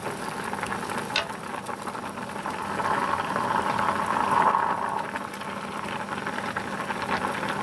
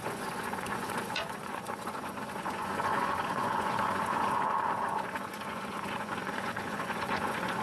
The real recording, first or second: first